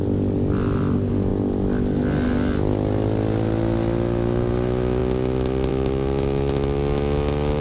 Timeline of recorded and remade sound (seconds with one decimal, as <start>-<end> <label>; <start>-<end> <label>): 0.0-7.6 recorded